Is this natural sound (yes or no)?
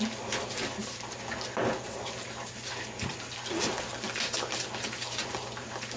yes